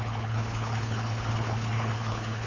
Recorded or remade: remade